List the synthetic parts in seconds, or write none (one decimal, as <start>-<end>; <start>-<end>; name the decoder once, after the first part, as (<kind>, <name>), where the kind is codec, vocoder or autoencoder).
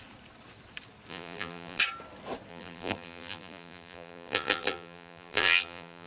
1.1-1.8 (vocoder, BigVGAN v2); 2.5-6.1